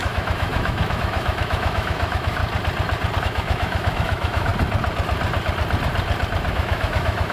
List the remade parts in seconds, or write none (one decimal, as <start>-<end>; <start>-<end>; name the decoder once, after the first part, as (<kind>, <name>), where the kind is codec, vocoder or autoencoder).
0.0-2.4 (autoencoder, DAC-VAE); 3.2-4.5; 6.5-7.3